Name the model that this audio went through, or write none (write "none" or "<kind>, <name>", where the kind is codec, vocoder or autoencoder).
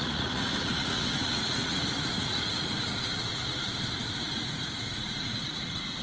vocoder, Vocos